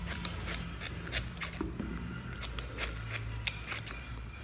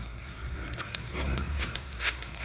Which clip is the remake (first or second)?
second